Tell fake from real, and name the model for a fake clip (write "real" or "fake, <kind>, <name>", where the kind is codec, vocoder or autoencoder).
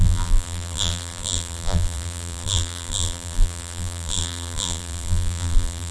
fake, vocoder, BigVGAN v2